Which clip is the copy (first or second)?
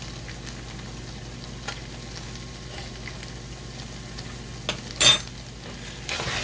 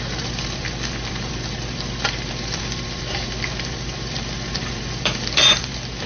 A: second